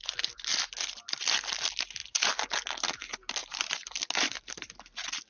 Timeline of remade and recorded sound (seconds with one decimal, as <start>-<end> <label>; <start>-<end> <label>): 0.0-2.0 recorded; 2.0-2.5 remade; 2.5-3.4 recorded; 3.4-4.8 remade; 4.8-5.3 recorded